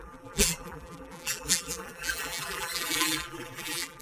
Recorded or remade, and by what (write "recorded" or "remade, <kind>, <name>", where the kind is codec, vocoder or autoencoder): remade, vocoder, BigVGAN v2